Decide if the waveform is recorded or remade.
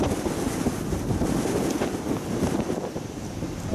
recorded